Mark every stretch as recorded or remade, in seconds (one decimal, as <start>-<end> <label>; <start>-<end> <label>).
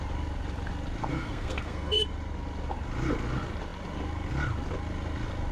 0.0-1.1 recorded; 1.1-2.0 remade; 2.0-5.5 recorded